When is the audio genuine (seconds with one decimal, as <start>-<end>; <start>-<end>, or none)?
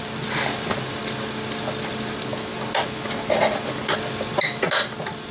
0.0-5.3